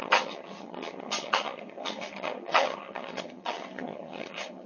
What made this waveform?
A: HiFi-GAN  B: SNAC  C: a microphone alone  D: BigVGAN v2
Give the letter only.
A